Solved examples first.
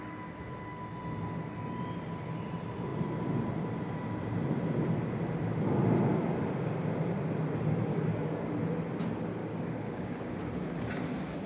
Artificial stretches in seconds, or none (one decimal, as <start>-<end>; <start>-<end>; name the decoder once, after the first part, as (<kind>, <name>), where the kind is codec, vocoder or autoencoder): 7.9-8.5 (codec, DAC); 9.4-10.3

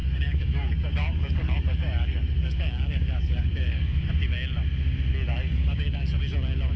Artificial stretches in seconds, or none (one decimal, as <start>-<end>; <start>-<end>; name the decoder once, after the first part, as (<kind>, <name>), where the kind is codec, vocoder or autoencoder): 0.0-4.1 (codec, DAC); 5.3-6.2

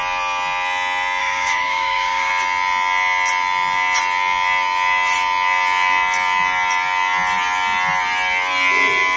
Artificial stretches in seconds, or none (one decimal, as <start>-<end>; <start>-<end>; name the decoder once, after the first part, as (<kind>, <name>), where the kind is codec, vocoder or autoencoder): 1.2-2.3 (codec, DAC)